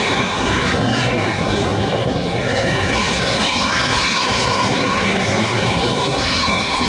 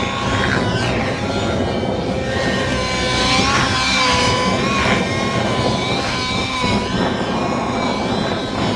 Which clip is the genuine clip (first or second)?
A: second